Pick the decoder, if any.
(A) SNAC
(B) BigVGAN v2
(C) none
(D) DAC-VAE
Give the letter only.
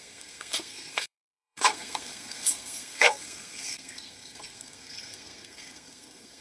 A